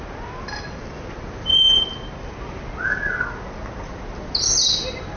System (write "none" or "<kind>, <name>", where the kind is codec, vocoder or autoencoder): none